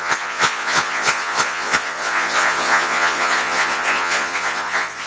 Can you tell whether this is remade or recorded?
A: remade